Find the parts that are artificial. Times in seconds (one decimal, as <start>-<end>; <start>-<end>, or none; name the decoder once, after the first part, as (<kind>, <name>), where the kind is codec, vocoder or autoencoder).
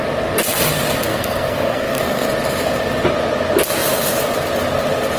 1.1-2.3 (codec, SNAC)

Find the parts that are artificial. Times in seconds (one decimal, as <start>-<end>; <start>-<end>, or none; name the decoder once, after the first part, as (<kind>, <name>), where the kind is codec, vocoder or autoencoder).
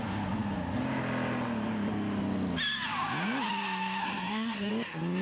4.0-4.7 (codec, SNAC)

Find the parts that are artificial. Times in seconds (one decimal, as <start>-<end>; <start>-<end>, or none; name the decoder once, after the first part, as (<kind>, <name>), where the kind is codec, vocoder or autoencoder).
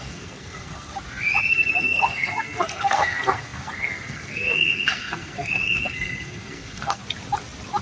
0.0-0.9 (codec, SNAC); 1.5-7.0